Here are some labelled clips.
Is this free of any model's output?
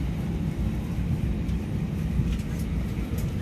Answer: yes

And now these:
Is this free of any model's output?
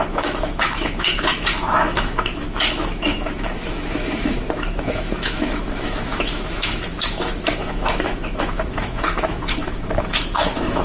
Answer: no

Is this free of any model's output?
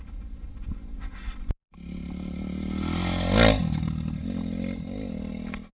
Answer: yes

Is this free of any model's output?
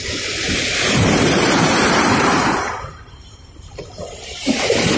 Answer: no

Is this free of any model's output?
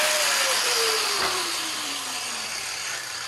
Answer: no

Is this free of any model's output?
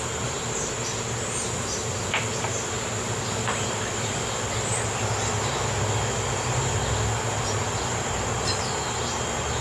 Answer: yes